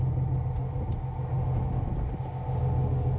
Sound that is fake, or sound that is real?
real